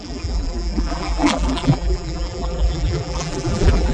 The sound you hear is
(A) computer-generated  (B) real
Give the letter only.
A